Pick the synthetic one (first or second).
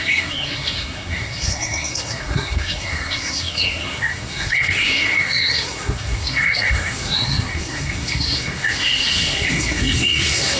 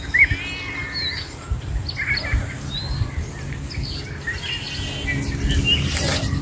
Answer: first